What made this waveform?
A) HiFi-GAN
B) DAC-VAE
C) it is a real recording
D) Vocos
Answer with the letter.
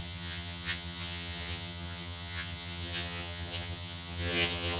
A